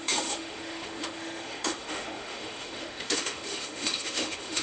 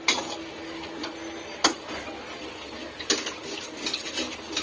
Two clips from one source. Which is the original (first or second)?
second